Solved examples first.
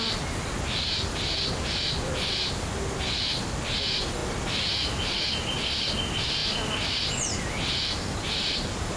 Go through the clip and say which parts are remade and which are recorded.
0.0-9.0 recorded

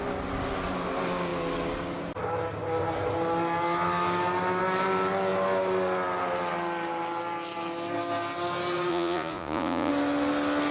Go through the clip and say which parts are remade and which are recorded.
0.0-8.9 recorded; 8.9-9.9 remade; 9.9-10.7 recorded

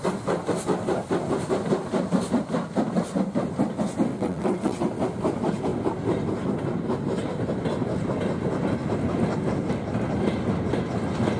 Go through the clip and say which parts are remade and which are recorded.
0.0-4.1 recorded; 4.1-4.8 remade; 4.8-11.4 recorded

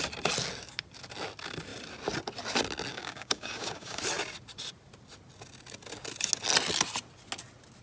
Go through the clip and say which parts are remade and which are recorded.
0.0-2.9 recorded; 2.9-4.0 remade; 4.0-7.8 recorded

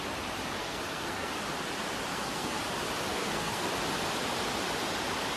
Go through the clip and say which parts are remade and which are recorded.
0.0-0.6 recorded; 0.6-1.3 remade; 1.3-2.1 recorded; 2.1-2.6 remade; 2.6-3.1 recorded; 3.1-3.7 remade; 3.7-5.4 recorded

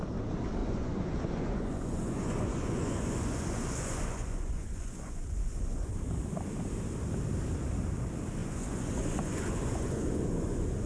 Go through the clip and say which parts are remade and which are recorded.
0.0-0.6 recorded; 0.6-5.9 remade; 5.9-8.4 recorded; 8.4-10.9 remade